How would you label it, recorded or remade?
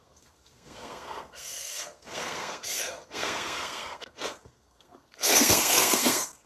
remade